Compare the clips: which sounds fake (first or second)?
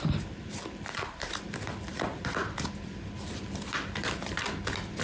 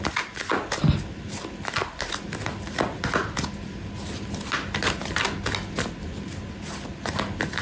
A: first